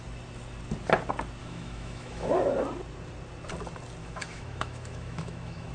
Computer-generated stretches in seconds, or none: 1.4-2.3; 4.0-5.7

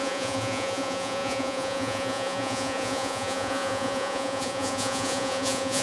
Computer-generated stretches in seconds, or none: 0.0-5.8

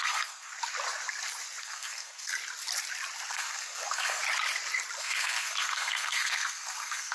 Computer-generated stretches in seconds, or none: 0.0-0.5; 1.6-2.3; 3.3-4.2; 5.0-7.1

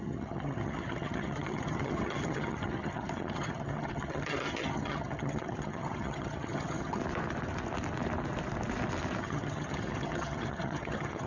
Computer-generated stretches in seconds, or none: 0.0-7.0; 9.2-11.3

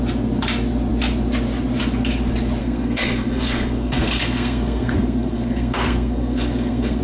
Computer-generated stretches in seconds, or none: 2.6-7.0

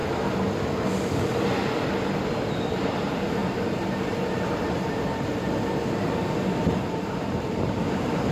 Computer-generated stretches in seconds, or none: 2.3-8.3